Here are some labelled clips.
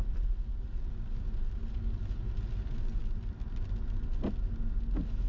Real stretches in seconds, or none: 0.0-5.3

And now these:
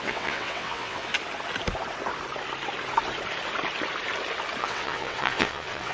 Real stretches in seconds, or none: 1.1-4.6